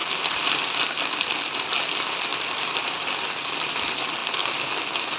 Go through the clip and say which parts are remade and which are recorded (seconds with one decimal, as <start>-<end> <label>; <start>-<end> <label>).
0.0-0.5 remade; 0.5-5.2 recorded